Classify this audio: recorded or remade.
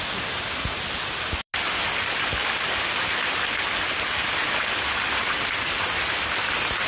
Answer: recorded